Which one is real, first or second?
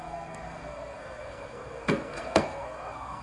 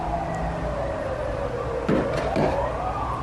second